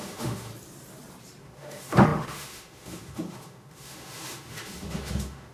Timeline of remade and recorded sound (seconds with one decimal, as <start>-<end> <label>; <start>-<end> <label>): 0.0-0.5 remade; 0.5-1.4 recorded; 1.4-5.5 remade